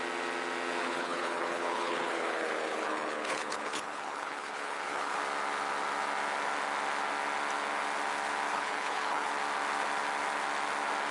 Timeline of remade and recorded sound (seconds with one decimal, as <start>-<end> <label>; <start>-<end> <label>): 0.0-0.8 recorded; 0.8-5.2 remade; 5.2-8.5 recorded; 8.5-9.3 remade; 9.3-11.1 recorded